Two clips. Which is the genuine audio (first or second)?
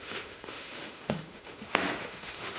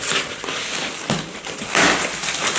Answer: second